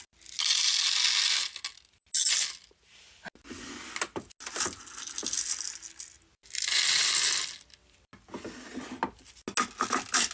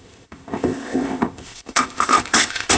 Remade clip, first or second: second